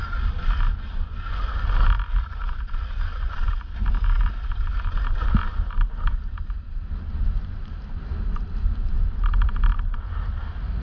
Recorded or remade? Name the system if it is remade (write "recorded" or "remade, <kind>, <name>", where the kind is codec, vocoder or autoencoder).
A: recorded